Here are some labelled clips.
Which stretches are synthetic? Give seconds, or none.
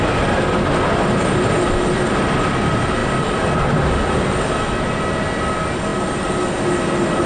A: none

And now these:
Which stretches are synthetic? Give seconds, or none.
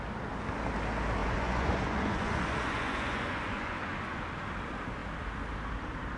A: 1.2-4.2 (vocoder, Vocos)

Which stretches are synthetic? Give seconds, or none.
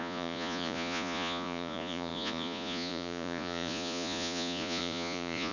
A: 0.0-5.5 (vocoder, Vocos)